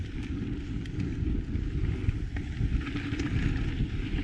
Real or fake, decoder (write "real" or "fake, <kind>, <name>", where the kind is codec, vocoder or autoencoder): real